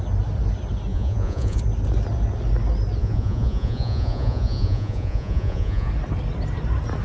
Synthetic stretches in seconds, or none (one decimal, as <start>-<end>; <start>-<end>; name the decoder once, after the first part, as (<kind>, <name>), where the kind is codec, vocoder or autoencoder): 0.9-1.6 (vocoder, Vocos); 3.0-5.9